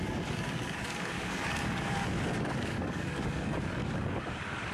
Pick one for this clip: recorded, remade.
remade